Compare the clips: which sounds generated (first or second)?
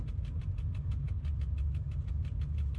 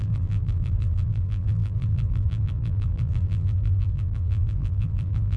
second